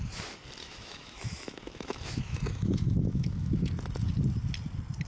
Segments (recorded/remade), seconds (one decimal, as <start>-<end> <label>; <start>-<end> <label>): 0.0-0.6 recorded; 0.6-3.7 remade; 3.7-5.1 recorded